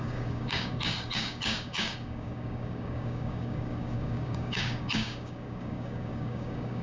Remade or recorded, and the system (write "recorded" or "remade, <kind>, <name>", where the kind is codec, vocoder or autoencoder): remade, codec, DAC